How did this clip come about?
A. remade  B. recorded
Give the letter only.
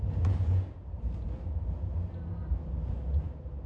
B